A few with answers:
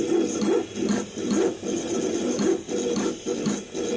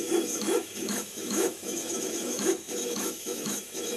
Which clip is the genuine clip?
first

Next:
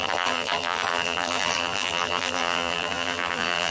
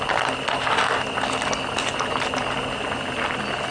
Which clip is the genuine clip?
second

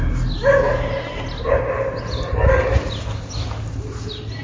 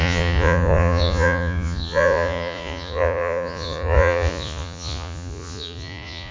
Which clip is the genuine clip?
first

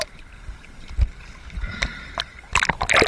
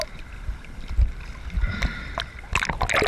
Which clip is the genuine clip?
second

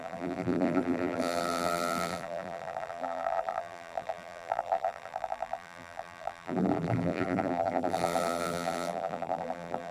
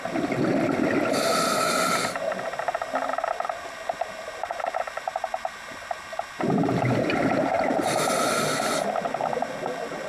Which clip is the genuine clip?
second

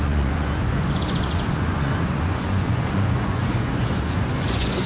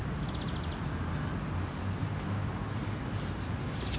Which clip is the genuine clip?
second